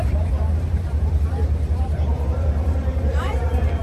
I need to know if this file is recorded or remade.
remade